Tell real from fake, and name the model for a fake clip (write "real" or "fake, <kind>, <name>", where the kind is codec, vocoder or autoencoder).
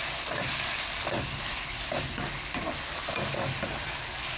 real